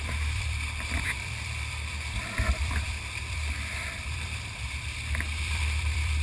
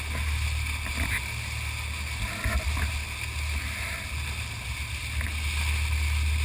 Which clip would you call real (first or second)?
second